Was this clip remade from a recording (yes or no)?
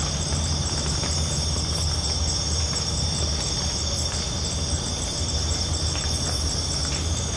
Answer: no